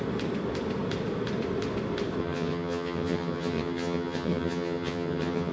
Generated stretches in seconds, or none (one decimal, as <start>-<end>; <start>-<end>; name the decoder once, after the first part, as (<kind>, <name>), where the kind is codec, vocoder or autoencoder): 2.2-5.5 (vocoder, HiFi-GAN)